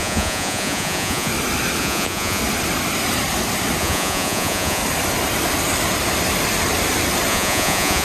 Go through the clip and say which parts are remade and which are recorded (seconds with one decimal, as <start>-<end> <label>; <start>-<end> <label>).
0.0-1.3 remade; 1.3-1.8 recorded; 1.8-2.4 remade; 2.4-3.8 recorded; 3.8-4.8 remade; 4.8-7.3 recorded; 7.3-8.0 remade